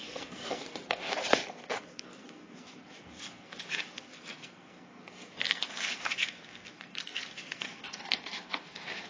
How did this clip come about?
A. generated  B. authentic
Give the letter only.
A